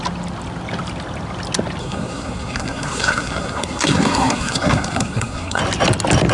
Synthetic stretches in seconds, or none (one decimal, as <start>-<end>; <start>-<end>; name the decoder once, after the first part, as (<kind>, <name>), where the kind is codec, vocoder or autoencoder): 1.8-5.6 (codec, SNAC)

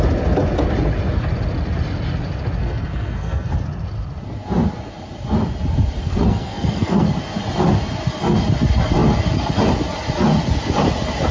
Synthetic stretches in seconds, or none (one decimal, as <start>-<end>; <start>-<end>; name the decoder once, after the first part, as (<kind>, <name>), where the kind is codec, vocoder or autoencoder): 2.6-3.5 (codec, SNAC); 6.0-7.1

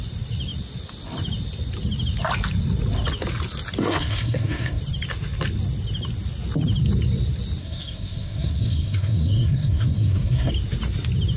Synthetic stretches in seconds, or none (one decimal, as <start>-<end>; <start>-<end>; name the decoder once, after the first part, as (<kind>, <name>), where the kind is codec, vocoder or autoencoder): 3.8-4.8 (codec, SNAC); 7.6-10.5

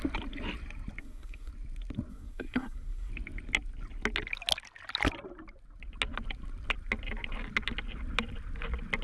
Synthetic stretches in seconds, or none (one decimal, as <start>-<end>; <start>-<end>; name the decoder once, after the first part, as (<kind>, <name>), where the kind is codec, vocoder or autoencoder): 1.0-1.5 (codec, SNAC); 2.1-3.1

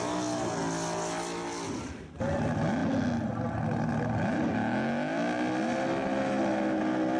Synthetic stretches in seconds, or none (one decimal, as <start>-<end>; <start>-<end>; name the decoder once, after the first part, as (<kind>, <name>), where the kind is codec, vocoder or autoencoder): none

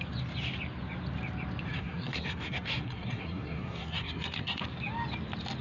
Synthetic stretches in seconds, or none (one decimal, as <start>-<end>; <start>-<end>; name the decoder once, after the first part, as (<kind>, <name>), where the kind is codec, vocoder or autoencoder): 1.7-4.6 (codec, SNAC)

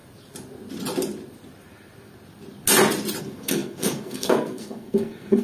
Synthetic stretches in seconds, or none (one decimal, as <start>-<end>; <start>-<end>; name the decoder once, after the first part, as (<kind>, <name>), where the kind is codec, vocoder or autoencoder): 3.2-5.4 (codec, SNAC)